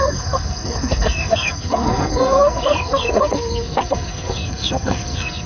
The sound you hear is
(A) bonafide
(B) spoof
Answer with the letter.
B